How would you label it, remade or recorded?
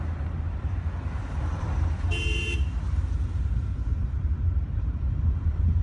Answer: remade